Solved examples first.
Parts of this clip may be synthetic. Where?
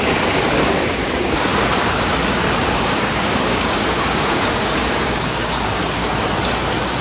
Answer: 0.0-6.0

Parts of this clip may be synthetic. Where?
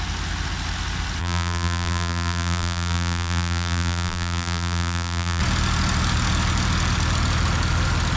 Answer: 1.2-5.4